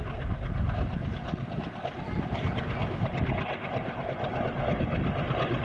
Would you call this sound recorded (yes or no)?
yes